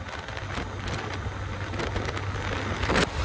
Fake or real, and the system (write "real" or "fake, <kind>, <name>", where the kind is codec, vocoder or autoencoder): real